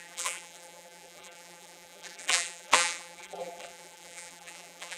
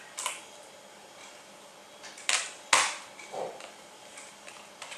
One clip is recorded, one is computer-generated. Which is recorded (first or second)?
second